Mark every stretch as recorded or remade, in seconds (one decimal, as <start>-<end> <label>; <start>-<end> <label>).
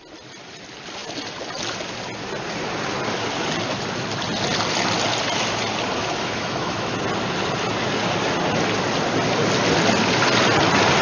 0.0-6.0 recorded; 6.0-6.9 remade; 6.9-11.0 recorded